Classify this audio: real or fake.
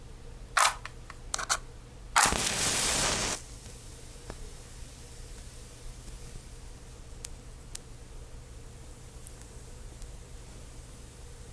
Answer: real